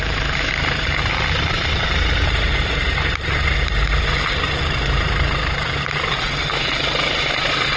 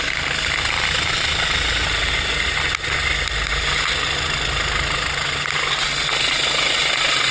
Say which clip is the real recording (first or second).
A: second